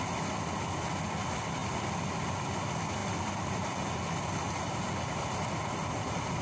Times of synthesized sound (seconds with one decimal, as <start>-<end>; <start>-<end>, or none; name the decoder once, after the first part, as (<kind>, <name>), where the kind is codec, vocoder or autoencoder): 1.6-2.6 (vocoder, BigVGAN v2)